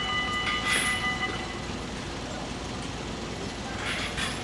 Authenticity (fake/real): real